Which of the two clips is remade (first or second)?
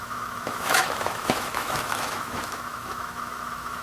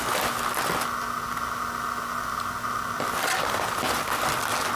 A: first